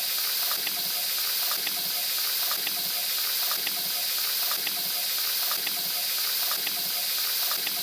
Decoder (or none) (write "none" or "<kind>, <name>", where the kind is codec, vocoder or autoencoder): none